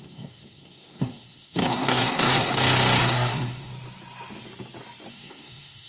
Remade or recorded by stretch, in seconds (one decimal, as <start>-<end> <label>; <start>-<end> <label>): 0.0-2.5 remade; 2.5-3.0 recorded; 3.0-3.7 remade; 3.7-5.1 recorded; 5.1-5.9 remade